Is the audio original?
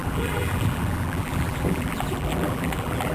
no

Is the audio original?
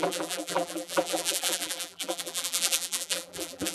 no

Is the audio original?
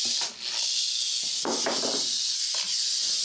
yes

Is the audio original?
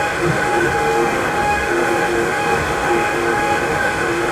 no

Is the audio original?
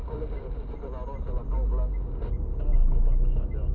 yes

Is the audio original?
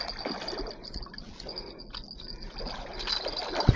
yes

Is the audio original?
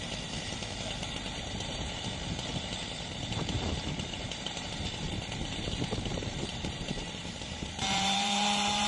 no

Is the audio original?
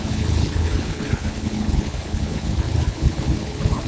no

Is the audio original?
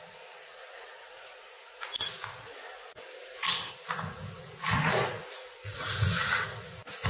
no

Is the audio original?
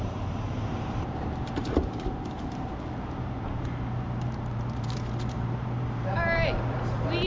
no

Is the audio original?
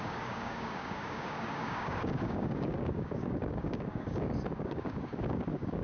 no